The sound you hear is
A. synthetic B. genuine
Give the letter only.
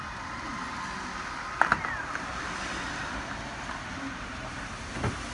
B